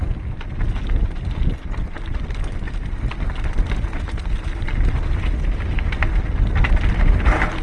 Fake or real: real